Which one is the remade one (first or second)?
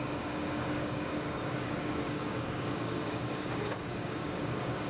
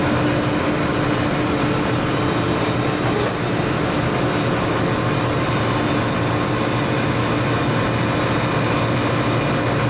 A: first